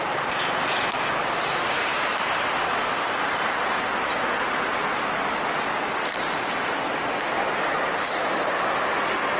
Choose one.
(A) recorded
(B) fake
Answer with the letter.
A